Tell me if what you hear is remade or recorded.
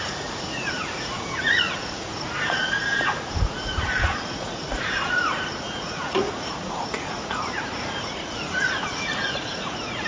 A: remade